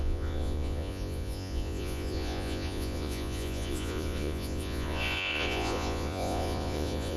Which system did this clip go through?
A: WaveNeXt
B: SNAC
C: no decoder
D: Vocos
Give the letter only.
D